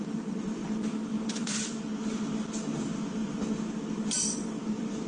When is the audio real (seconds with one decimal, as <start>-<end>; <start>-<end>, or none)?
0.6-1.4; 1.9-2.5; 3.2-4.2